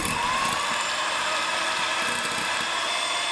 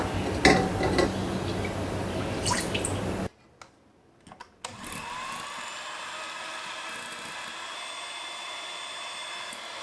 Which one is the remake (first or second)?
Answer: first